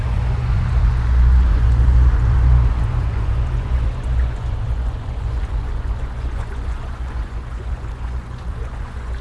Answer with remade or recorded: remade